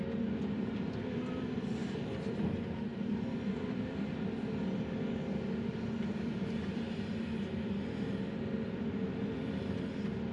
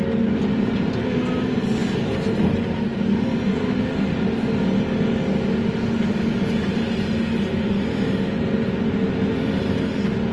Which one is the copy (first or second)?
first